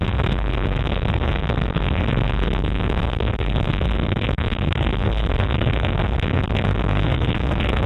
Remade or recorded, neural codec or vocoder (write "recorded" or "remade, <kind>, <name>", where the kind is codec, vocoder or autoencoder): remade, codec, SNAC